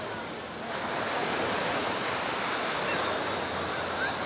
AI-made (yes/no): no